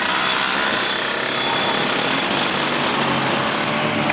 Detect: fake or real real